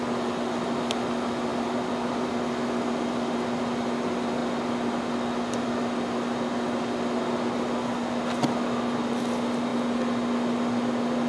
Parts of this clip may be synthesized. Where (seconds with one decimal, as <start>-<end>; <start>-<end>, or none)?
1.5-2.3